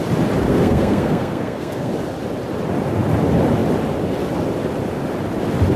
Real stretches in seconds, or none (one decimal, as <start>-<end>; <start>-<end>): 0.0-0.5; 1.9-5.8